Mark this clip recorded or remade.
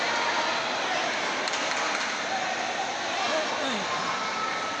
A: recorded